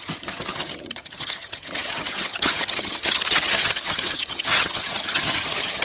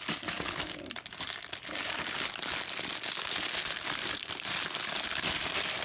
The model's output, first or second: first